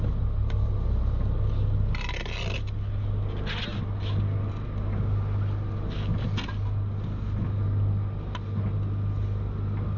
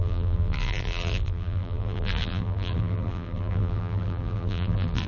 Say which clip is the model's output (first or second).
second